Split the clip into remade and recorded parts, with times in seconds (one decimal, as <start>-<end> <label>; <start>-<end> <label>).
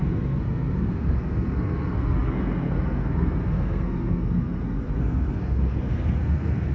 0.0-6.7 remade